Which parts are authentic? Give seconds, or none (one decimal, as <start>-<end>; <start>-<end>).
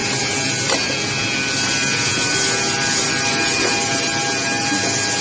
0.0-5.2